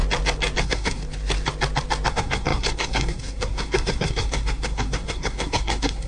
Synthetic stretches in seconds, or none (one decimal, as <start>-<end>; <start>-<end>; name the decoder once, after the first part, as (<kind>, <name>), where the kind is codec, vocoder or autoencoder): 0.6-1.0 (codec, SNAC); 2.1-6.1